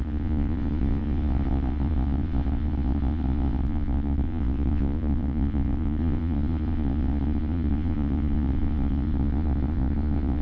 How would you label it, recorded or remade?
remade